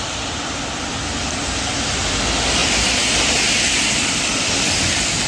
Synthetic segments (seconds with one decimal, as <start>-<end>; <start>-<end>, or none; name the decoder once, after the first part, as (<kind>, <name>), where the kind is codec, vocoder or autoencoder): none

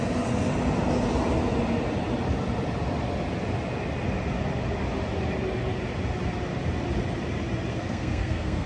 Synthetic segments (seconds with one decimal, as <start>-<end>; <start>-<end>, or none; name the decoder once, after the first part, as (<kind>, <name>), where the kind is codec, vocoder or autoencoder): 7.7-8.7 (codec, SNAC)

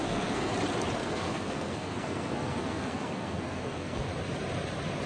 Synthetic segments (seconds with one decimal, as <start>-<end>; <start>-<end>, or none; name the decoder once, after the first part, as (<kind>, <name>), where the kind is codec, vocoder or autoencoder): 0.0-0.5 (codec, SNAC); 1.0-4.1

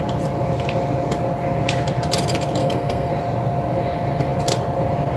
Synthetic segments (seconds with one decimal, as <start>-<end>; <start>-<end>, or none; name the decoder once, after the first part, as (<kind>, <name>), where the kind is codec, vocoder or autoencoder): 2.6-3.1 (codec, SNAC)

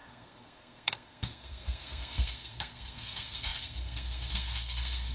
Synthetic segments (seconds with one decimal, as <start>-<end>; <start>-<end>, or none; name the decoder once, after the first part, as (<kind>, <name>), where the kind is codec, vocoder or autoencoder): 0.0-5.1 (codec, SNAC)

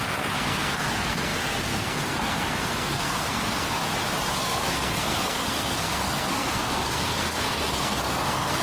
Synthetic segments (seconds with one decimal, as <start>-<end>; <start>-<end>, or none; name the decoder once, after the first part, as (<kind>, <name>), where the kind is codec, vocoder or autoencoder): 0.0-3.8 (codec, SNAC); 4.4-8.6

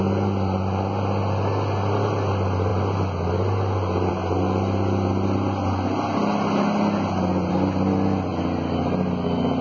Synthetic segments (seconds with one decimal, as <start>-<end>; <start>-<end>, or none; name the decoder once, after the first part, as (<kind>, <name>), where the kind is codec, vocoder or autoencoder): none

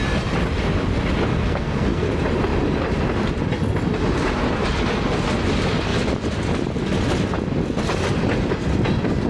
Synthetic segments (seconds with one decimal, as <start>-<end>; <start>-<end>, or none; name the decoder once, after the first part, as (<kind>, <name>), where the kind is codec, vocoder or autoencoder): 1.4-2.1 (codec, SNAC)